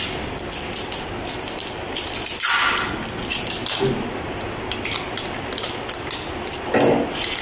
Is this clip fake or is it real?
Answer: real